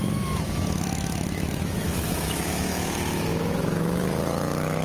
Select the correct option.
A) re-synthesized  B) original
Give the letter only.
A